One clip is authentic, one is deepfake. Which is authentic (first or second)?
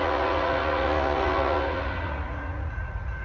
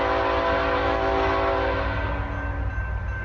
second